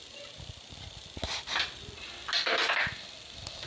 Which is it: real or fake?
real